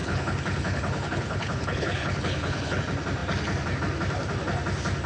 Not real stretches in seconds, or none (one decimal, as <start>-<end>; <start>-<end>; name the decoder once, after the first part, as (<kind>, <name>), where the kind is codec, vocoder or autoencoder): 0.0-2.8 (codec, HILCodec)